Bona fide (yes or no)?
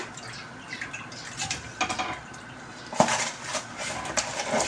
yes